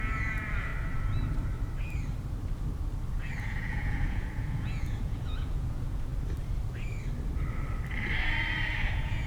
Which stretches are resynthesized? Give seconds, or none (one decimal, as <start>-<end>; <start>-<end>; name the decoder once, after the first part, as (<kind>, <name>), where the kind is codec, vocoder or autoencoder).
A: 0.0-0.7 (vocoder, Vocos); 3.4-6.1; 8.9-9.3